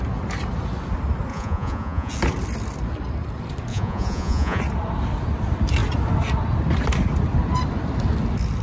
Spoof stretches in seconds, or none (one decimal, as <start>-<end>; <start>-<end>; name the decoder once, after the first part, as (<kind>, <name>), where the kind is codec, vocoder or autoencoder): 1.3-2.1 (vocoder, Vocos); 3.7-4.6